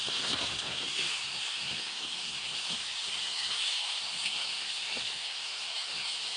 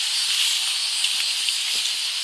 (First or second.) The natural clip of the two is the second